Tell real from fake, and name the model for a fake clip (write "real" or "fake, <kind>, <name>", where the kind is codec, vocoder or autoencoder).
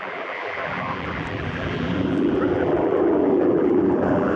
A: fake, vocoder, BigVGAN v2